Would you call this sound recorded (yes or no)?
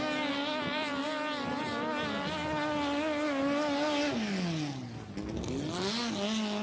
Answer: yes